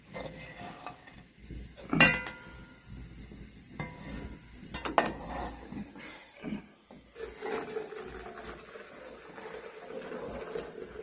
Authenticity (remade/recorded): recorded